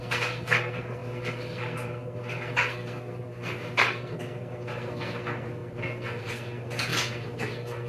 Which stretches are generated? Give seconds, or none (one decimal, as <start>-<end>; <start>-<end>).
0.0-7.9